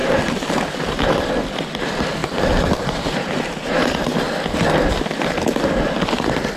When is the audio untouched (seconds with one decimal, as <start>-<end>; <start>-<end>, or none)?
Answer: 1.3-2.2; 3.8-6.6